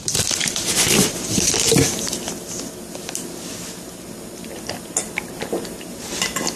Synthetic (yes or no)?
no